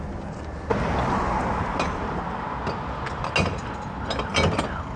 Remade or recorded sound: recorded